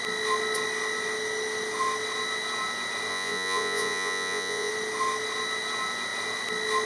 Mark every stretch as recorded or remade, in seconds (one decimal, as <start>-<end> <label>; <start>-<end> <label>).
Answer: 0.0-3.1 recorded; 3.1-4.7 remade; 4.7-6.9 recorded